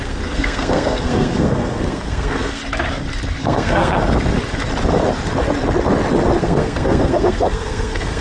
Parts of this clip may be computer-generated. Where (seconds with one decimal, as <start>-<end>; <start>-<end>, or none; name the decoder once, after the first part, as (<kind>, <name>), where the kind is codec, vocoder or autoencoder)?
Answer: 0.0-2.6 (codec, SNAC); 3.4-4.0; 6.4-8.2